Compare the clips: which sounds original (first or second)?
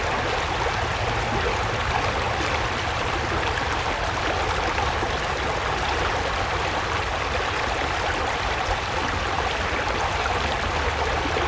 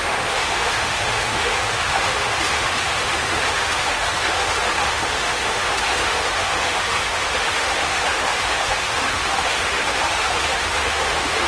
first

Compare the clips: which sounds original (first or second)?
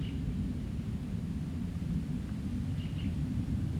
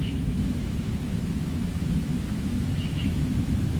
first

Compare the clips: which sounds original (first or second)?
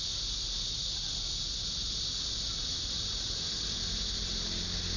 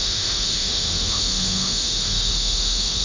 first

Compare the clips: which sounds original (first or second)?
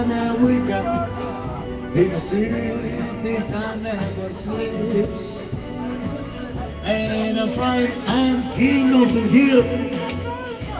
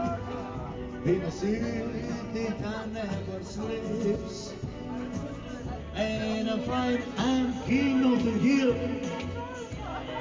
second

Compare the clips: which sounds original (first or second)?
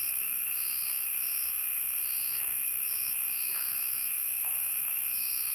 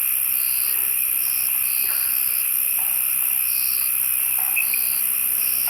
second